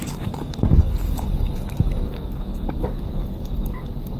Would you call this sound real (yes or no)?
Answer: no